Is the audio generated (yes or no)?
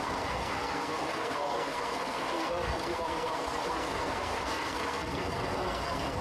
yes